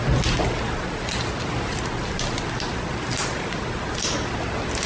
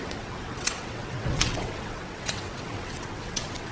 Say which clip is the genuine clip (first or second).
first